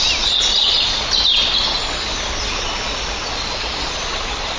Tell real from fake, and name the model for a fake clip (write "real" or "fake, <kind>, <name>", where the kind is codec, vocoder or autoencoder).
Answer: real